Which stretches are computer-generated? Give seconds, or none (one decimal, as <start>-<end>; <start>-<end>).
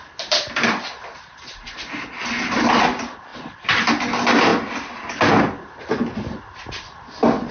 none